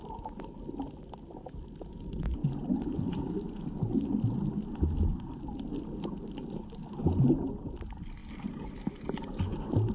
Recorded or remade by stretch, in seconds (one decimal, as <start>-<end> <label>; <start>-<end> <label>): 0.0-9.9 recorded